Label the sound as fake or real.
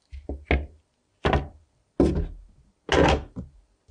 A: real